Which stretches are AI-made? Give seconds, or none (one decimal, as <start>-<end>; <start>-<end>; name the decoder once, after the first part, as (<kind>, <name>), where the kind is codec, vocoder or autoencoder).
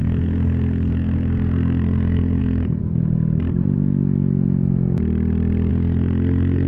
0.0-2.8 (codec, SNAC); 5.7-6.7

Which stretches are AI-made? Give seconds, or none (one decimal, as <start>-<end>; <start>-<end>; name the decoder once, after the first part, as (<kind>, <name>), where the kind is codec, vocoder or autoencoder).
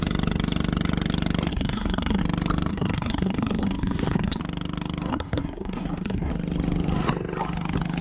1.5-2.2 (codec, SNAC); 2.7-4.4; 5.1-6.3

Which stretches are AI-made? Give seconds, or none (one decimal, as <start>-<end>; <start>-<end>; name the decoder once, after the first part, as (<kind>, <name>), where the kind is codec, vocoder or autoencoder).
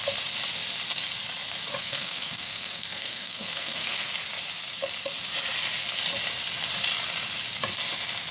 1.8-4.1 (codec, SNAC)